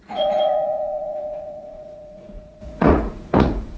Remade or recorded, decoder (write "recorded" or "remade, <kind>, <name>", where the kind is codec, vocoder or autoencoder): remade, vocoder, Vocos